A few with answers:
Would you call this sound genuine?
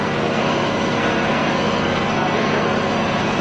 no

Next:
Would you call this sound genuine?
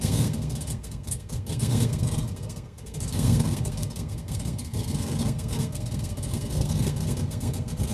no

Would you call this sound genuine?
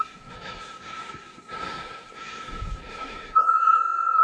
no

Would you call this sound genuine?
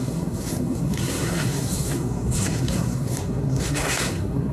no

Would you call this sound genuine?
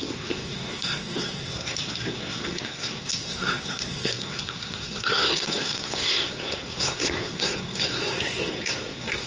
no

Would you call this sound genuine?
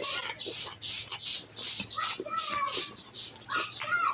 yes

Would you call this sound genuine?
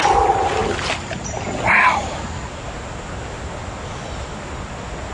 yes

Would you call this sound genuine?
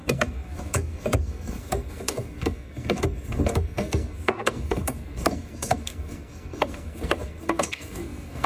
no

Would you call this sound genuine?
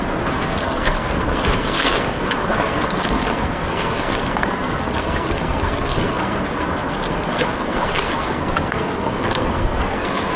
no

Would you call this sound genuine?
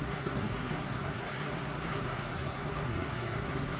no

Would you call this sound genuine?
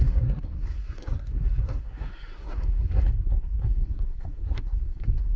no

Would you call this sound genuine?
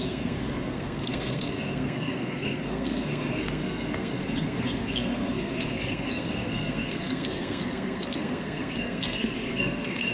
no